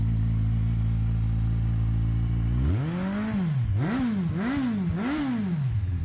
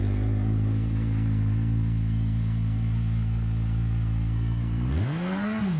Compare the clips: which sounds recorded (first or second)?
first